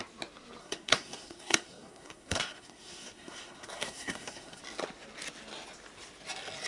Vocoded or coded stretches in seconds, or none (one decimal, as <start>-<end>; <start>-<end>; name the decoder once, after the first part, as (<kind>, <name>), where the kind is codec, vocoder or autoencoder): 0.6-4.6 (codec, SNAC)